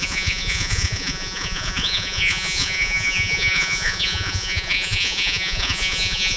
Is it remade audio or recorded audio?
remade